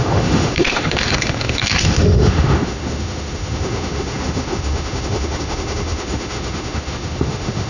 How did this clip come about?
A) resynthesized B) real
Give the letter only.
A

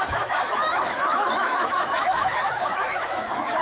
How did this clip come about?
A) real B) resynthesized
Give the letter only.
B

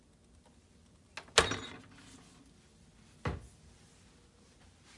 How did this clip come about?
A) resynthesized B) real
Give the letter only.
B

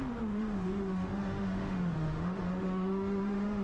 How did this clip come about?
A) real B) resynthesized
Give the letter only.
B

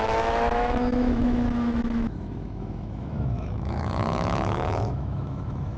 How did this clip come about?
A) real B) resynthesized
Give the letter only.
B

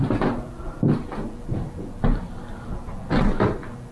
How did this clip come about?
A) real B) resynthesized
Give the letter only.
A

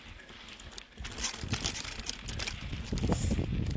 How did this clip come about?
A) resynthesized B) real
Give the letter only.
B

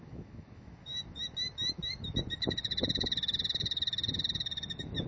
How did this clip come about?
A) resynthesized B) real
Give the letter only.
A